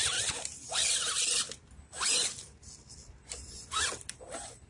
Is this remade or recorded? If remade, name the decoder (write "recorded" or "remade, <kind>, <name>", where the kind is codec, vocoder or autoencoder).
recorded